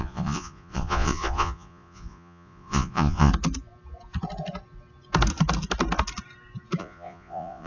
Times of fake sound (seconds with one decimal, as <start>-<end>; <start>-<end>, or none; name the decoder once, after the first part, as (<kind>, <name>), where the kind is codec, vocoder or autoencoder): 0.0-3.3 (vocoder, Vocos); 6.8-7.7